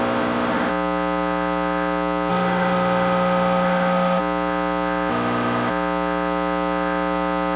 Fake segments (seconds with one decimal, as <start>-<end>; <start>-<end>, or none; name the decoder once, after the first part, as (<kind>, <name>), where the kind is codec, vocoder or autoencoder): 0.0-0.7 (autoencoder, DAC-VAE); 2.3-4.2; 5.1-5.7